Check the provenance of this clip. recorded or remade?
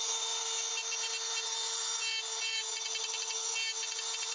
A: recorded